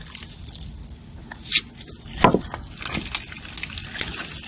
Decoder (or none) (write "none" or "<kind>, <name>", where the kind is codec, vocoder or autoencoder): none